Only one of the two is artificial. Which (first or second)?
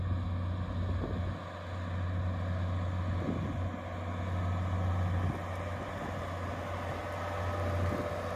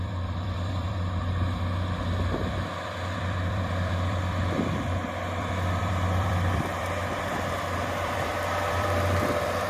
second